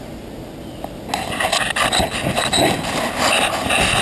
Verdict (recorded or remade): recorded